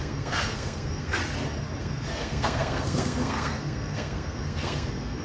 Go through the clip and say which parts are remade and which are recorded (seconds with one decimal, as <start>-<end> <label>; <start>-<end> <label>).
0.0-1.2 remade; 1.2-1.8 recorded; 1.8-5.2 remade

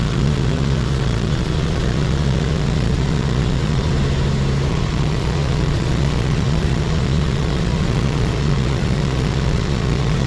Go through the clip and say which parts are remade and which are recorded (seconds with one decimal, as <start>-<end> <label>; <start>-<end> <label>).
0.0-3.9 remade; 3.9-4.7 recorded; 4.7-10.3 remade